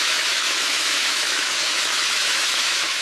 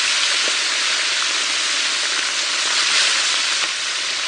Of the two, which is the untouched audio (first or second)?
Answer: second